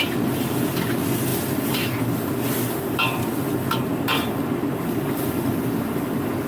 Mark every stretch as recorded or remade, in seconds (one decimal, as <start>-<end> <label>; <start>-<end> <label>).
0.0-3.9 recorded; 3.9-5.5 remade; 5.5-6.5 recorded